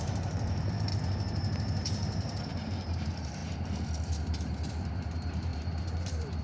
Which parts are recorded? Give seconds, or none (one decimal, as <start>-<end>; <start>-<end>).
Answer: 0.9-2.4; 3.4-4.7